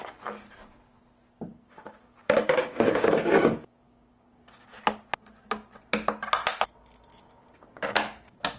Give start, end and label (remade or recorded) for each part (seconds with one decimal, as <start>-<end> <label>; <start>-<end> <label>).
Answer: 0.0-1.5 recorded; 1.5-4.7 remade; 4.7-7.1 recorded; 7.1-8.6 remade